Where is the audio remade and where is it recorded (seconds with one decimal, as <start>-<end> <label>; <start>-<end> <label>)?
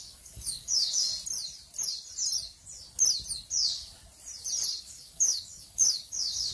0.0-1.1 remade; 1.1-4.8 recorded; 4.8-6.5 remade